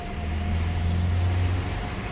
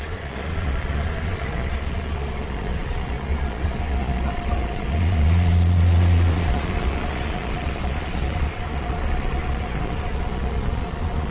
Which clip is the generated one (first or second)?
second